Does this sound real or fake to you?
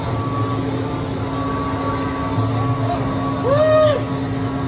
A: real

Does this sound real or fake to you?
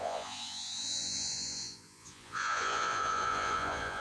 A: fake